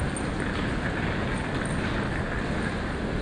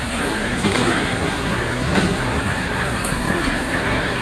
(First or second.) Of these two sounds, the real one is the first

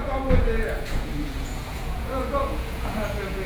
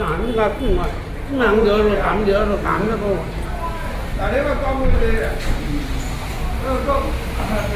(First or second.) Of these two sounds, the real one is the second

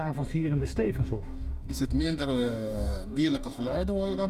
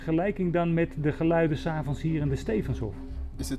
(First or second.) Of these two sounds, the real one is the second